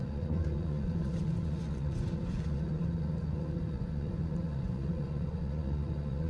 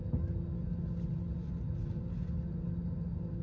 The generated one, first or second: first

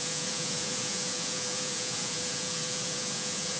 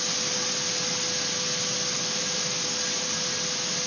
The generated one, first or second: first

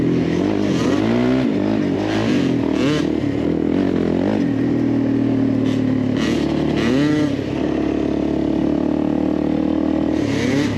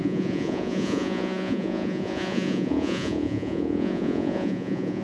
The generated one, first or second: second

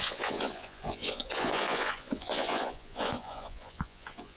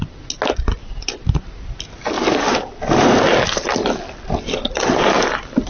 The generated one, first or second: first